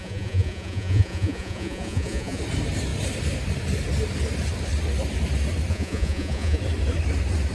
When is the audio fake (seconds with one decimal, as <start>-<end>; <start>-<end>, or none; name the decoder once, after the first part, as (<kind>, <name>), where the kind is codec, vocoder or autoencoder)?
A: 0.0-2.4 (vocoder, Vocos); 5.7-6.6